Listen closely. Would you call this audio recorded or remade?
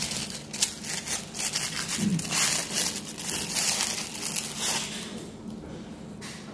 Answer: recorded